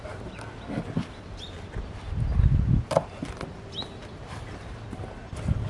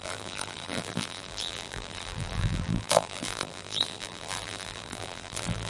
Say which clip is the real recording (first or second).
first